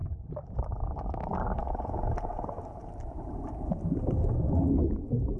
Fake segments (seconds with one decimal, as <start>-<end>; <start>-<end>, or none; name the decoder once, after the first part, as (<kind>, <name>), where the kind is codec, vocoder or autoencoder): 0.0-0.5 (vocoder, BigVGAN v2); 1.3-2.9